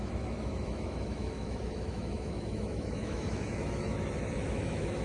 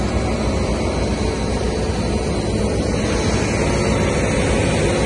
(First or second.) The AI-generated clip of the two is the first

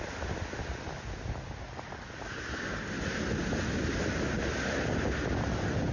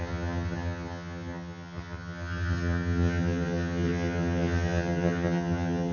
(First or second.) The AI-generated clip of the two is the second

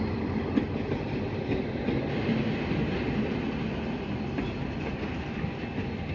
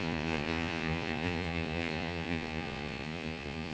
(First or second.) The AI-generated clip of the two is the second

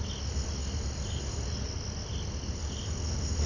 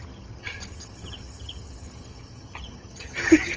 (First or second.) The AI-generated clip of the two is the second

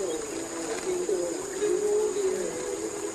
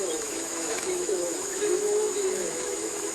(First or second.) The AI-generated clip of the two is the second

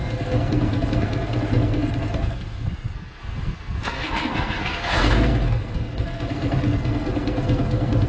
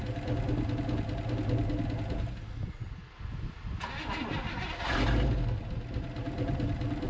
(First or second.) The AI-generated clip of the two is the first